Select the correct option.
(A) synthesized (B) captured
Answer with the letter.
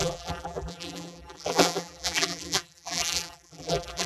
A